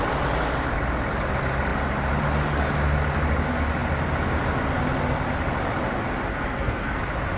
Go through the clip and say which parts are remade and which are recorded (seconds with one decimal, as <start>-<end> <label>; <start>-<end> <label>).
0.0-6.3 recorded; 6.3-7.0 remade; 7.0-7.4 recorded